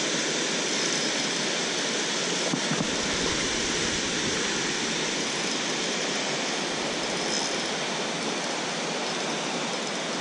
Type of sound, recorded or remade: recorded